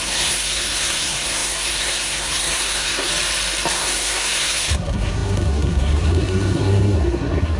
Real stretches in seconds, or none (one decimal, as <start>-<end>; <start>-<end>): 3.1-3.7